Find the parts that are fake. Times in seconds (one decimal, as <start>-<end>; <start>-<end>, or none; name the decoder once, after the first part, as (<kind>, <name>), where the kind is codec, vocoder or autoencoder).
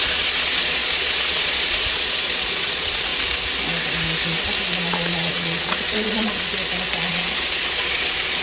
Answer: 0.0-3.1 (vocoder, Vocos); 4.9-6.5; 7.1-8.4